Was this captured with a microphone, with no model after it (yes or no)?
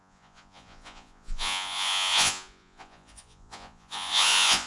no